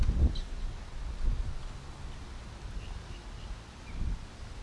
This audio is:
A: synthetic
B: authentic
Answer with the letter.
B